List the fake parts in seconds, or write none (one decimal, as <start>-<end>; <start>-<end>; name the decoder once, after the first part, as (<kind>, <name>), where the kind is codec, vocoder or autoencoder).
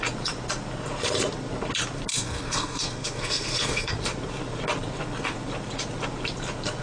2.1-3.9 (codec, SNAC)